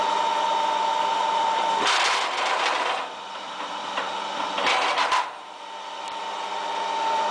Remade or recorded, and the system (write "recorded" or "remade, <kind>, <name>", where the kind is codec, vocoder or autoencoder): remade, vocoder, BigVGAN v2